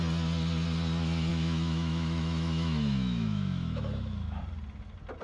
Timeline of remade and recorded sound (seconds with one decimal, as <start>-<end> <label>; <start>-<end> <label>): 0.0-1.3 recorded; 1.3-4.4 remade; 4.4-5.2 recorded